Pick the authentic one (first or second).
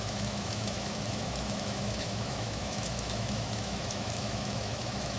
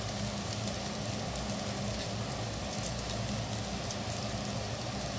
second